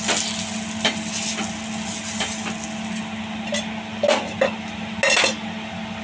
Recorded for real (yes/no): yes